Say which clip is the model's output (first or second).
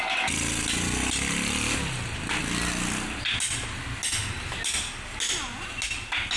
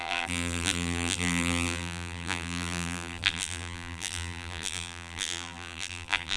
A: second